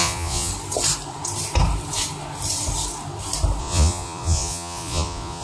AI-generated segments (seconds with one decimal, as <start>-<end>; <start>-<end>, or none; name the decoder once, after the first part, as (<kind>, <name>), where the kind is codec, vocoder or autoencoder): 0.0-0.5 (vocoder, Vocos); 3.6-5.4